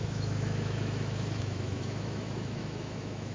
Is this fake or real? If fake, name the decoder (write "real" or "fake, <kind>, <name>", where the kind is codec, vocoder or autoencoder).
fake, autoencoder, DAC-VAE